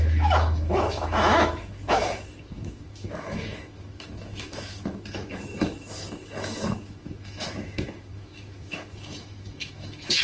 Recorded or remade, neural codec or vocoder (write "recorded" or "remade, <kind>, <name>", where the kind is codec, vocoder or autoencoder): remade, autoencoder, DAC-VAE